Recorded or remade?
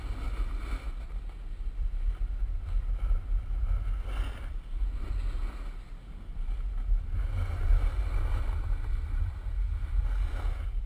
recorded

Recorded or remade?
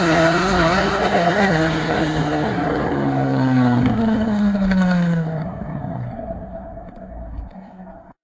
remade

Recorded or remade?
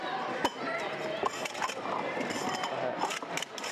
recorded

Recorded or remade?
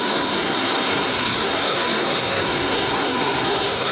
remade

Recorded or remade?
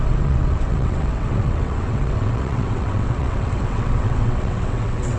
remade